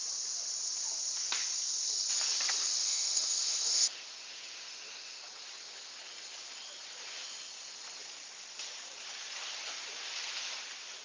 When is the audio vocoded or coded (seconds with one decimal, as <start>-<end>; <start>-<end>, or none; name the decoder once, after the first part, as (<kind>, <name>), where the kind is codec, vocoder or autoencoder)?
2.8-5.2 (autoencoder, DAC-VAE)